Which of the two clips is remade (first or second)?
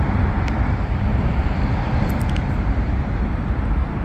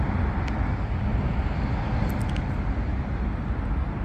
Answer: first